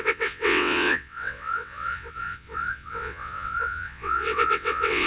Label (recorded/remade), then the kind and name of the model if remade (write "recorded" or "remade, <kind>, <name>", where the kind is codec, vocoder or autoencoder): remade, vocoder, WaveNeXt